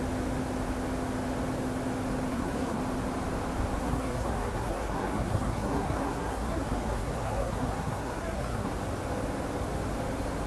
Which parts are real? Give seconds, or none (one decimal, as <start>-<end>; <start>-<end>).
0.0-2.3; 2.8-3.8; 8.7-10.5